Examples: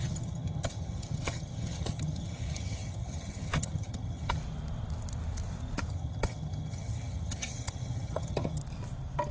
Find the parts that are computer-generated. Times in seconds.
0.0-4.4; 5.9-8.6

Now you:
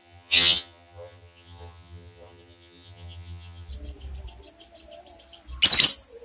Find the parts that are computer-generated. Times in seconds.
0.0-3.7

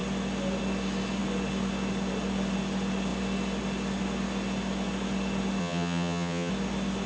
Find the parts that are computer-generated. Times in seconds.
5.6-6.5

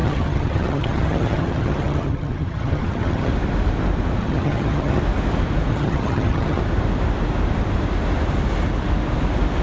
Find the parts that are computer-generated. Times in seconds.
0.0-3.3; 4.2-5.0; 5.7-6.6